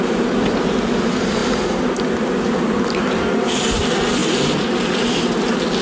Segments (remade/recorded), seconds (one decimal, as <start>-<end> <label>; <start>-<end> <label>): 0.0-5.8 recorded